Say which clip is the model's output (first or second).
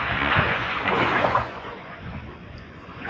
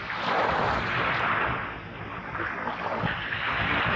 first